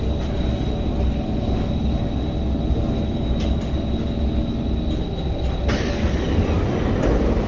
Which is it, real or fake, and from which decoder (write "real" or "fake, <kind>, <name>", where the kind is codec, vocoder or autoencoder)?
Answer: real